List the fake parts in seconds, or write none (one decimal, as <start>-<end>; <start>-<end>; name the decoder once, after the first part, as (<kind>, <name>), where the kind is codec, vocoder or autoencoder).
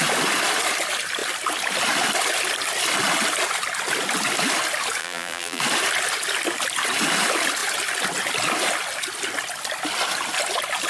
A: 5.0-5.6 (vocoder, BigVGAN v2)